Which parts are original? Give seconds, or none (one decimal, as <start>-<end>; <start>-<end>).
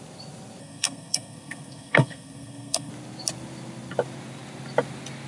0.0-0.6; 2.9-5.3